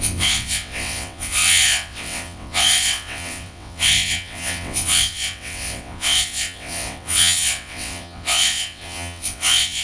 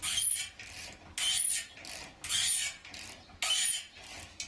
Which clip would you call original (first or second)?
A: second